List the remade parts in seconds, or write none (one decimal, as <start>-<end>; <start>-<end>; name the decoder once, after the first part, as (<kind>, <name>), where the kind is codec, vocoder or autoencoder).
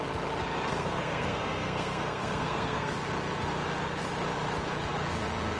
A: 0.7-2.9 (codec, SNAC)